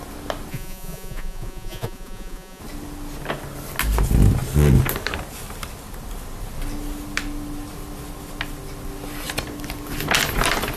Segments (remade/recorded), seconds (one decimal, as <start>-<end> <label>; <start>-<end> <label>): 0.0-0.5 recorded; 0.5-2.6 remade; 2.6-10.8 recorded